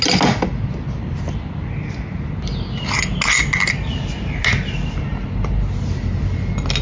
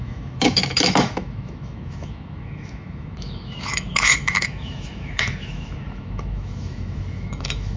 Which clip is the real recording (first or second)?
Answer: first